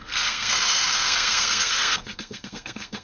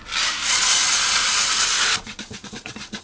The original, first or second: second